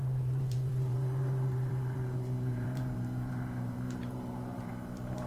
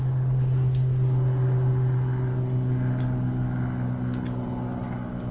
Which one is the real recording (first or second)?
second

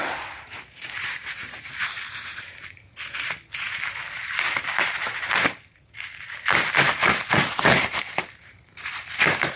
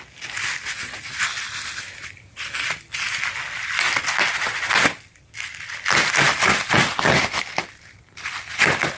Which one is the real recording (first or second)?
second